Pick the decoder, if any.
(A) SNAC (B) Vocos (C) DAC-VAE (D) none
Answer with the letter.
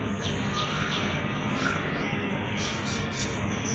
A